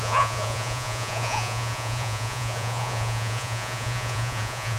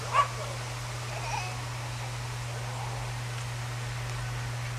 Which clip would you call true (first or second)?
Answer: second